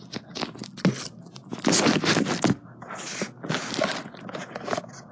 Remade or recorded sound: recorded